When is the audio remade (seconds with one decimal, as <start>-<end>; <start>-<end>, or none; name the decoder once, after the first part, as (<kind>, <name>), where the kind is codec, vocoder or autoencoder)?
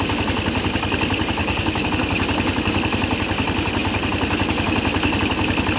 1.4-1.9 (codec, DAC)